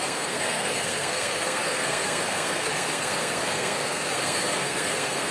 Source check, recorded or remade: remade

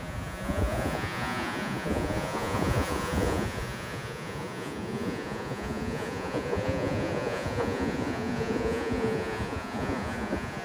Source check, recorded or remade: remade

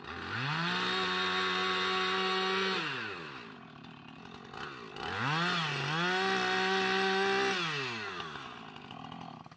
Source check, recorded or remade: recorded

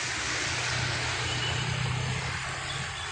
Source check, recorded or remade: recorded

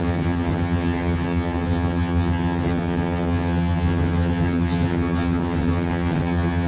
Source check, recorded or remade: remade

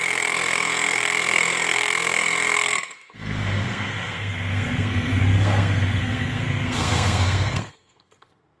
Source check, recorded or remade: remade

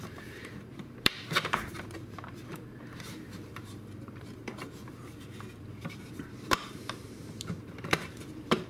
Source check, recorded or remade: remade